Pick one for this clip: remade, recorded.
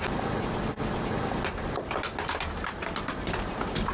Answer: recorded